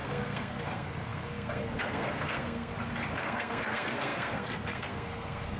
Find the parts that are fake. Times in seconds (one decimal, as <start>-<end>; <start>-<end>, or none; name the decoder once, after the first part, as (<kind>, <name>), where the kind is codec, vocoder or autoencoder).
0.0-2.7 (codec, SNAC); 3.2-5.6